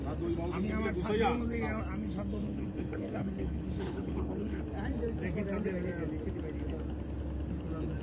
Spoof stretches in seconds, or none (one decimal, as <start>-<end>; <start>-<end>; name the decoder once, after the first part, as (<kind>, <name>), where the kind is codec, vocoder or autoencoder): 2.4-4.6 (codec, HILCodec)